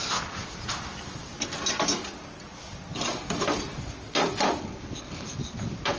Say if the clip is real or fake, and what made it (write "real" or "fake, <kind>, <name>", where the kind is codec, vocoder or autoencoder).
real